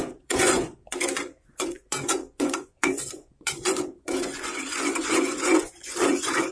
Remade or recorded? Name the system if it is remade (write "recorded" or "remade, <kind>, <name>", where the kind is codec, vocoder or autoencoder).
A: remade, vocoder, Vocos